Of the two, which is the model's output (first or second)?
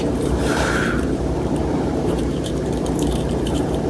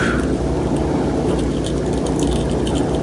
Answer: first